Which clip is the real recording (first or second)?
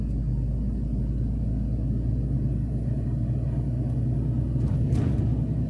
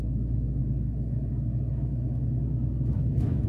first